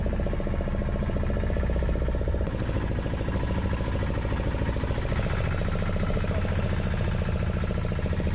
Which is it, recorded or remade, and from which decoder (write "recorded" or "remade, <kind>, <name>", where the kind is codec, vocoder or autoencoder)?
recorded